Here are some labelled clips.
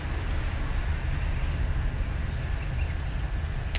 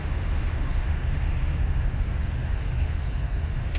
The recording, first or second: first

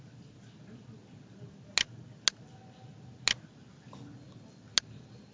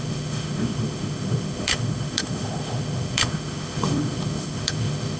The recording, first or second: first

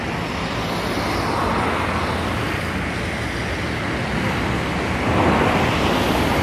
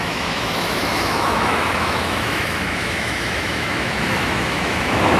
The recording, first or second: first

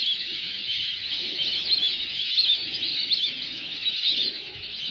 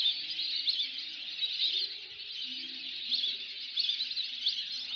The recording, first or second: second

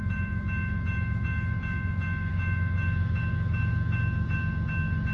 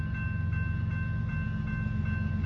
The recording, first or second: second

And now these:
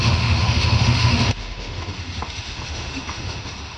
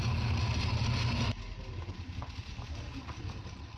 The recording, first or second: second